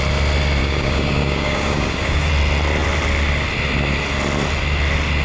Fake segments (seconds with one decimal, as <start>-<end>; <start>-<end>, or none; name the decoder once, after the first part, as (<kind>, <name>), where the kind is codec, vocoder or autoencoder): 0.6-2.3 (codec, DAC)